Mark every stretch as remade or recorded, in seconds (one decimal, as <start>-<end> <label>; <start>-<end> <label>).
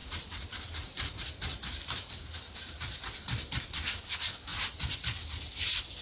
0.0-3.6 remade; 3.6-4.5 recorded; 4.5-5.3 remade; 5.3-6.0 recorded